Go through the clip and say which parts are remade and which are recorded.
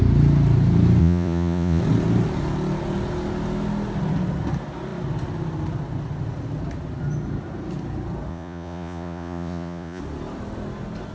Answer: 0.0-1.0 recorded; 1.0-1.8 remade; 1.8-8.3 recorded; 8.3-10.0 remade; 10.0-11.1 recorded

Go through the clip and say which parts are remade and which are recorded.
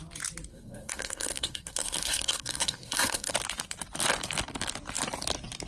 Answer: 0.0-0.5 recorded; 0.5-3.3 remade; 3.3-5.7 recorded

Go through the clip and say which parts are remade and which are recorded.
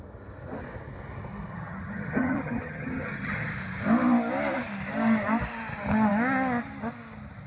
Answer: 0.0-1.5 recorded; 1.5-3.5 remade; 3.5-7.5 recorded